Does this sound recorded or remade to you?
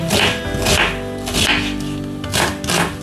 recorded